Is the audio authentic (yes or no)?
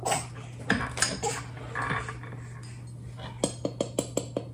yes